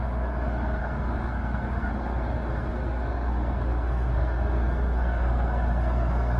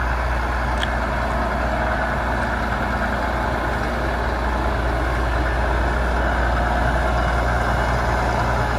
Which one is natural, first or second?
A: second